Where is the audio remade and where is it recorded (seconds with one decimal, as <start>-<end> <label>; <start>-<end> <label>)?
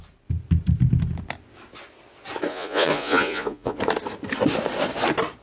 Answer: 0.0-2.5 recorded; 2.5-3.8 remade; 3.8-5.4 recorded